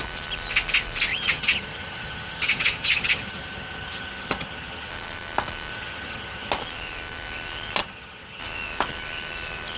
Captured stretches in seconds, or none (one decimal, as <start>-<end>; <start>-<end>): 0.0-1.1; 4.9-5.7; 6.5-7.8; 8.4-9.8